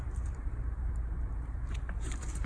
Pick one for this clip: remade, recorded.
remade